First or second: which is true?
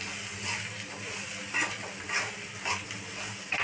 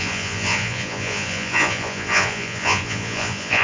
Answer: first